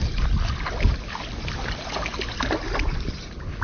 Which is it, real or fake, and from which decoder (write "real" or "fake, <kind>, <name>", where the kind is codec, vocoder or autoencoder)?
real